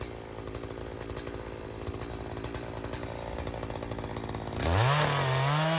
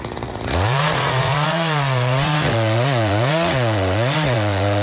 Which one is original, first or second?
first